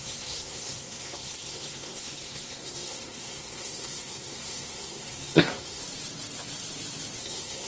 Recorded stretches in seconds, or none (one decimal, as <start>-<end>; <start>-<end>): 5.8-7.2